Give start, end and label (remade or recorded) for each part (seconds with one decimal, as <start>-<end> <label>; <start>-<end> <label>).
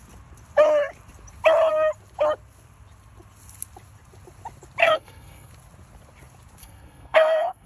0.0-4.8 recorded; 4.8-5.5 remade; 5.5-6.6 recorded; 6.6-7.7 remade